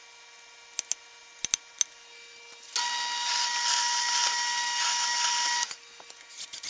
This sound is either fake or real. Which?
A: real